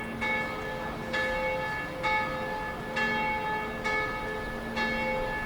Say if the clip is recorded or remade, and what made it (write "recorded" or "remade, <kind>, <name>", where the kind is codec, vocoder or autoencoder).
recorded